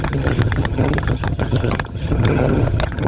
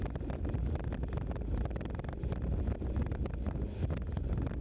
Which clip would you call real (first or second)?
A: second